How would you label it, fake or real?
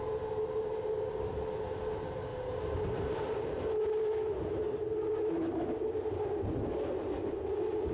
real